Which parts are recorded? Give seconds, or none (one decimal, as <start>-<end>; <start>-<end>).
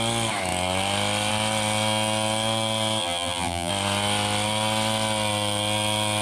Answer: 0.0-3.0; 3.7-6.2